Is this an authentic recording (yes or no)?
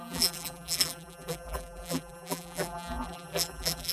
no